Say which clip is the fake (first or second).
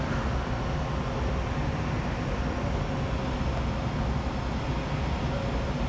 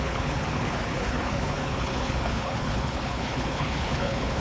second